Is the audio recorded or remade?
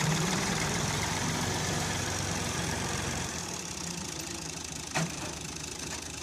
remade